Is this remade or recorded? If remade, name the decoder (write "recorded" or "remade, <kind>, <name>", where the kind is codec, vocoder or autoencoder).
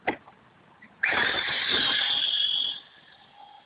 recorded